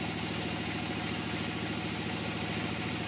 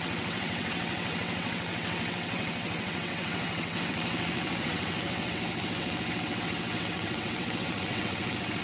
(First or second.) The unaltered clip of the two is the first